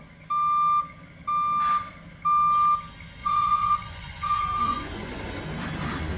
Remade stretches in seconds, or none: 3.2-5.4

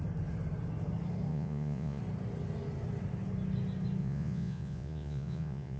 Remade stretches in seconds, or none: 1.3-2.0; 4.0-5.8

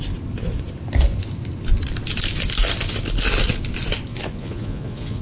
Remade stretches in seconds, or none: 4.1-5.2

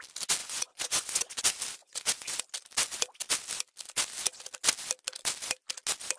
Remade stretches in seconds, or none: 0.4-1.4; 1.8-2.4

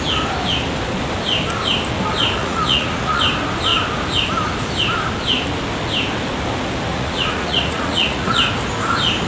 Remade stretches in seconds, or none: 2.4-3.2; 6.9-8.4